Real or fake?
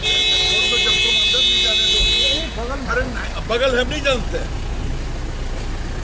real